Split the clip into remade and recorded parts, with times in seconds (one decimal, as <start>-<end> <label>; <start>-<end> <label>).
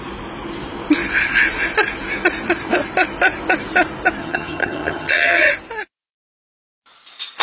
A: 0.0-4.2 recorded; 4.2-5.5 remade; 5.5-7.4 recorded